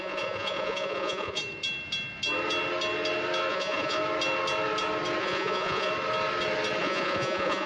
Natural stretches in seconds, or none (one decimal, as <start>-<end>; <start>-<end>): 1.4-3.5; 4.0-5.2; 5.9-6.8